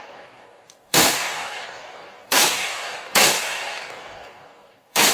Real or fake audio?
fake